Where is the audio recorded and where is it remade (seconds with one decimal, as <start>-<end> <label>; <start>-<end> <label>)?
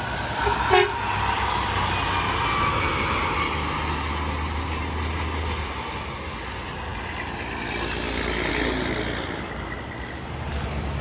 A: 0.0-11.0 recorded